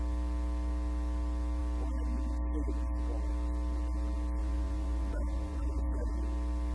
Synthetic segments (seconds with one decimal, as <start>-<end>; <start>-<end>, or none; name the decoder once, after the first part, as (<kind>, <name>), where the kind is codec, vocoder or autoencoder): 4.4-6.1 (vocoder, Vocos)